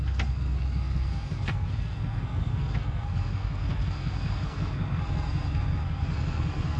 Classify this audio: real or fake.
fake